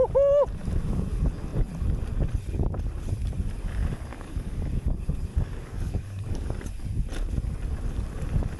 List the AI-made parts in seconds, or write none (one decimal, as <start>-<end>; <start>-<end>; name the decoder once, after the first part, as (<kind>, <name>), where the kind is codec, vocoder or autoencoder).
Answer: 4.1-4.7 (codec, DAC); 5.3-6.6